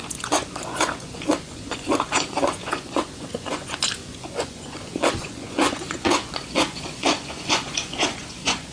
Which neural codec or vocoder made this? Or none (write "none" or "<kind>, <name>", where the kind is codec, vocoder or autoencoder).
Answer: vocoder, Vocos